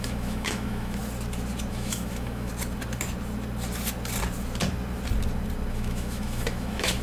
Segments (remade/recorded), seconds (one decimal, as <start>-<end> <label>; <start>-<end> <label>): 0.0-1.0 remade; 1.0-1.7 recorded; 1.7-2.5 remade; 2.5-5.7 recorded; 5.7-7.0 remade